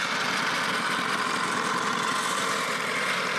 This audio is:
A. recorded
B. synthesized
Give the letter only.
A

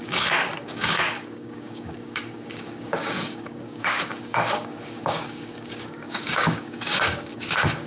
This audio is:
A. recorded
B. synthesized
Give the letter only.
B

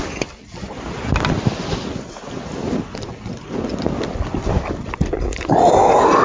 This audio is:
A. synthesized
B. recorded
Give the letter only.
B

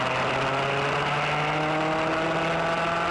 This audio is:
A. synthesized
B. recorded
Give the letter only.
B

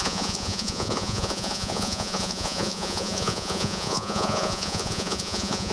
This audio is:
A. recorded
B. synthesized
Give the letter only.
B